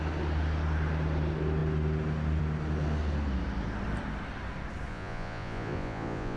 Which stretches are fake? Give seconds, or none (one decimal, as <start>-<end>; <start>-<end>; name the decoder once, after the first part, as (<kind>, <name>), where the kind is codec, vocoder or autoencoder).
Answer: 4.9-6.4 (vocoder, Vocos)